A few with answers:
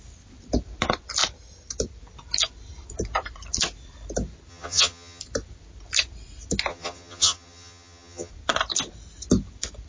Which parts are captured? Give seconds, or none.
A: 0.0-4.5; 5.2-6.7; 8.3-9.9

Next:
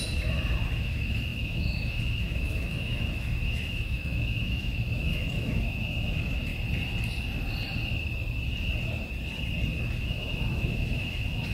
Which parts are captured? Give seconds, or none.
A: 6.5-10.0

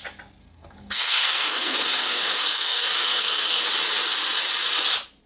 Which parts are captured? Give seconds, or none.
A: 0.0-0.4; 3.6-5.3

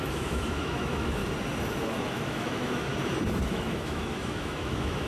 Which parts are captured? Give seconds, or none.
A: 1.2-2.1; 2.9-3.5